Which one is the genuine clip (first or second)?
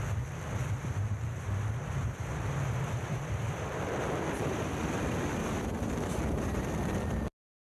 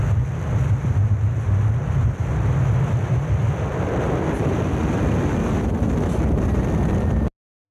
second